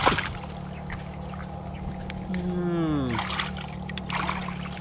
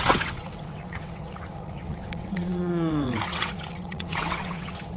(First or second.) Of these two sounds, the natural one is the first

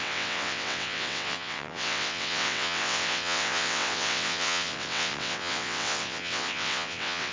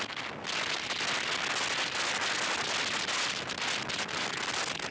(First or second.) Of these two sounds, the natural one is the second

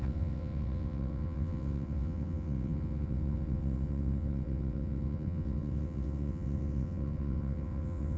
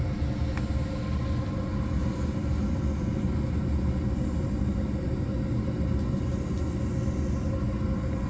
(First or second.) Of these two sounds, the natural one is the second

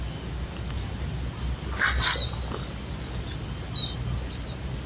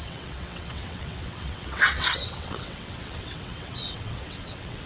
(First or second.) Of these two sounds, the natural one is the first